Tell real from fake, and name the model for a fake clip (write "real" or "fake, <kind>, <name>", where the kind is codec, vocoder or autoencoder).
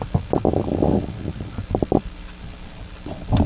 real